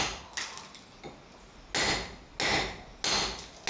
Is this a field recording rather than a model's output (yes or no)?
yes